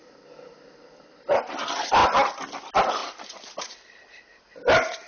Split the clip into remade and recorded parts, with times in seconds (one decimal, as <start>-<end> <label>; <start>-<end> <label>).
0.0-5.1 recorded